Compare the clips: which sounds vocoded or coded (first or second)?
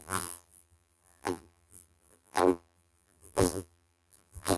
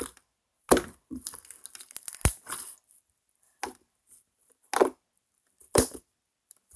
first